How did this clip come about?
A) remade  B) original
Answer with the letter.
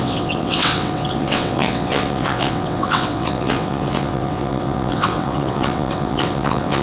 A